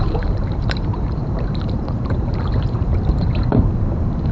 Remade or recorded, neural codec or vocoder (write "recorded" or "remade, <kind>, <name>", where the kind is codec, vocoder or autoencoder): remade, vocoder, BigVGAN v2